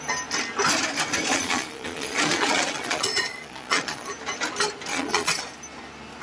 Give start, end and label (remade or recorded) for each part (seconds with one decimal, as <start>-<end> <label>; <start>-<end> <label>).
0.0-1.3 recorded; 1.3-4.1 remade; 4.1-4.9 recorded; 4.9-5.4 remade; 5.4-6.2 recorded